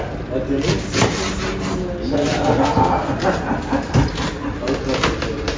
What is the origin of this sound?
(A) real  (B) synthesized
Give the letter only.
A